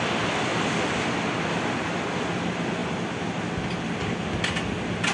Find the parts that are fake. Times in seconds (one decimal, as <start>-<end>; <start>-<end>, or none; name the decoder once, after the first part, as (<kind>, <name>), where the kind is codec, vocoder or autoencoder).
none